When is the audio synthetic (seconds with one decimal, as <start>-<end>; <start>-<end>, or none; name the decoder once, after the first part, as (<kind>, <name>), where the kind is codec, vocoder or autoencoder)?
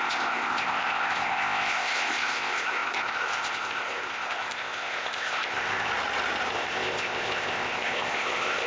0.0-5.9 (codec, ZipCodec); 6.5-8.7